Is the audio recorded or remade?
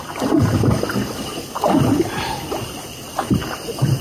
recorded